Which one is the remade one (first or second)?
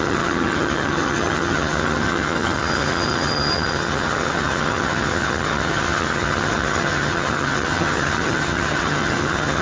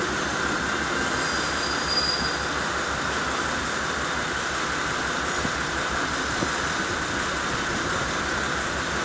first